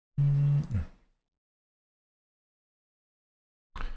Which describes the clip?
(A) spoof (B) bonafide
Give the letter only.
B